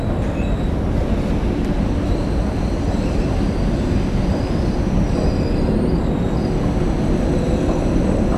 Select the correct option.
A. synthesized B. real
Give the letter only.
B